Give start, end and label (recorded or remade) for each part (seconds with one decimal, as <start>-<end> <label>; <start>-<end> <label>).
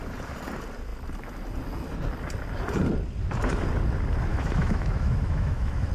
0.0-4.3 recorded; 4.3-5.9 remade